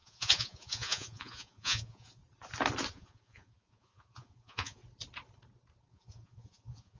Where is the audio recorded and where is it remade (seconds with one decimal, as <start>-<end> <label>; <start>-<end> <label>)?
0.0-2.2 remade; 2.2-2.9 recorded; 2.9-4.8 remade; 4.8-5.9 recorded; 5.9-7.0 remade